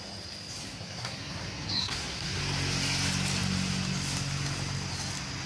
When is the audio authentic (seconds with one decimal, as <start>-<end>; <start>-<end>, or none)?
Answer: 0.0-0.6; 2.4-5.5